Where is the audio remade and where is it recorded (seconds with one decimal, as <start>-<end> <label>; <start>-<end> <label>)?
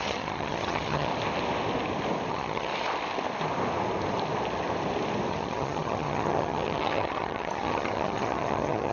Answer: 0.0-1.1 remade; 1.1-2.3 recorded; 2.3-2.7 remade; 2.7-5.3 recorded; 5.3-8.9 remade